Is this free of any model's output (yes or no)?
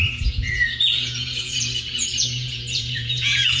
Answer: no